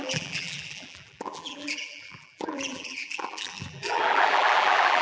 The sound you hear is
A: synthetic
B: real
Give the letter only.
A